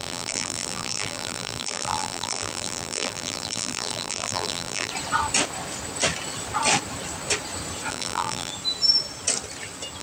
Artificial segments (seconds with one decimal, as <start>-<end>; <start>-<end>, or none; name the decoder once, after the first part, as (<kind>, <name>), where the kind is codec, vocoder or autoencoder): 0.0-4.9 (vocoder, BigVGAN v2); 7.9-8.5